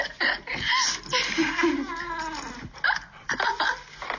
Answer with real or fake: real